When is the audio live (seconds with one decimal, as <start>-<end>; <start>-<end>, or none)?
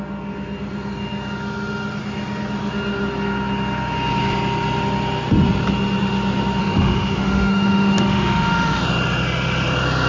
0.0-6.6; 8.8-10.1